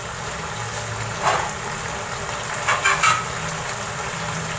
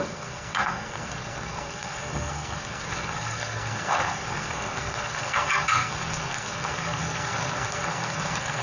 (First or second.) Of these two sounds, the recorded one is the first